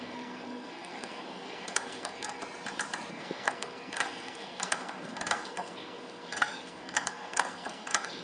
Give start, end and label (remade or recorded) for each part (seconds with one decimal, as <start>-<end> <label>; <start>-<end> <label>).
0.0-2.4 remade; 2.4-3.1 recorded; 3.1-8.2 remade